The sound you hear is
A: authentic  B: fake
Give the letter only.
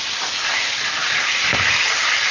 A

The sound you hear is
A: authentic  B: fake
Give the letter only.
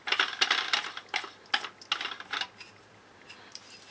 A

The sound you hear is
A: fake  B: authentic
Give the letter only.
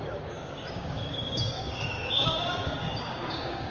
A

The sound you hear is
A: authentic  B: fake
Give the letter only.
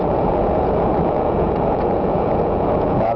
B